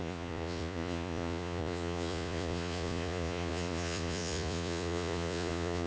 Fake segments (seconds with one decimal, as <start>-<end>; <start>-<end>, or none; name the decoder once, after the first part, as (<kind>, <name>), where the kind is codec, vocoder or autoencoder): 0.0-5.9 (vocoder, Vocos)